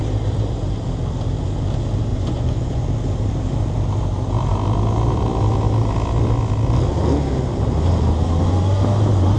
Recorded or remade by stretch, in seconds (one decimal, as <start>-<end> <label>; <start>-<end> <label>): 0.0-2.1 recorded; 2.1-2.8 remade; 2.8-9.4 recorded